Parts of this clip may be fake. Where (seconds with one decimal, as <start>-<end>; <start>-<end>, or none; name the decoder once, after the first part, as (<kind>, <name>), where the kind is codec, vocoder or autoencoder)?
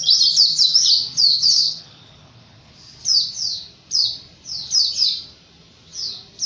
1.3-2.7 (codec, HILCodec)